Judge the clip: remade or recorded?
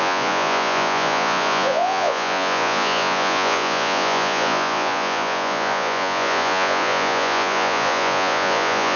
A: remade